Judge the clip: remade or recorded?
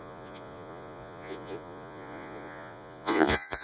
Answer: remade